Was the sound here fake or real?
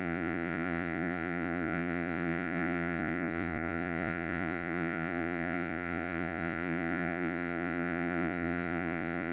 fake